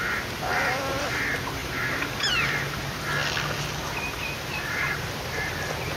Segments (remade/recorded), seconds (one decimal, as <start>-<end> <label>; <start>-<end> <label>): 0.0-1.6 recorded; 1.6-3.0 remade; 3.0-4.2 recorded; 4.2-5.5 remade; 5.5-6.0 recorded